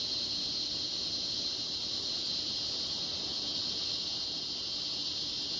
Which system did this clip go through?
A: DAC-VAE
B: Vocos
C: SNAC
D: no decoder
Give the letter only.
D